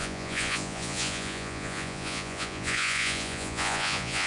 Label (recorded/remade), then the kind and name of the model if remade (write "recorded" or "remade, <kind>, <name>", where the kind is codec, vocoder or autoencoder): remade, vocoder, Vocos